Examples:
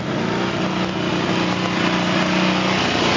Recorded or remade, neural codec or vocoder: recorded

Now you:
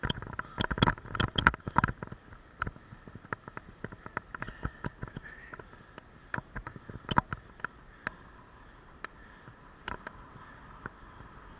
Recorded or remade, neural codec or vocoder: recorded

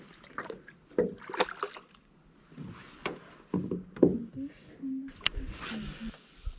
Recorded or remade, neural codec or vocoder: recorded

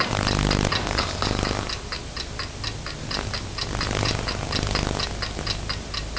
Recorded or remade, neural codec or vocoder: recorded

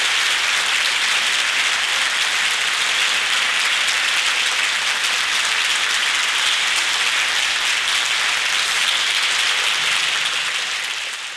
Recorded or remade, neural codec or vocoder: recorded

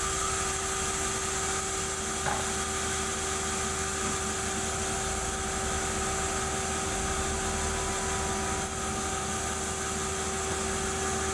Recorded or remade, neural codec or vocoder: recorded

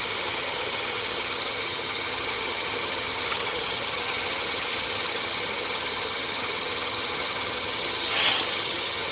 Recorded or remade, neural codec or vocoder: remade, vocoder, HiFi-GAN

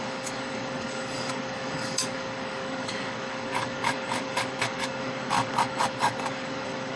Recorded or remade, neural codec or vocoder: remade, codec, DAC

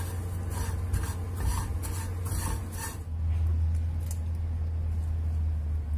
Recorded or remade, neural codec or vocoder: recorded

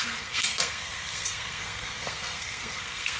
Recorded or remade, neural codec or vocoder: remade, codec, SNAC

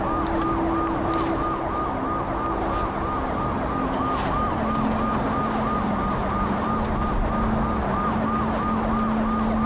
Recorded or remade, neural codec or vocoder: recorded